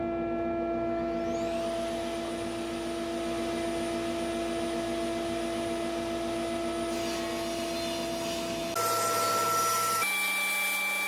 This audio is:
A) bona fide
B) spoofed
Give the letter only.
A